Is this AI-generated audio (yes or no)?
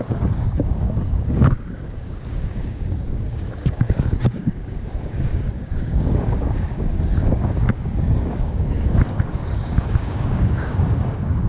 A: yes